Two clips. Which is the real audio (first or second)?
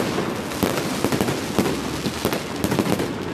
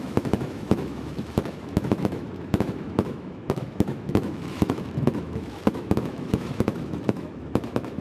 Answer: first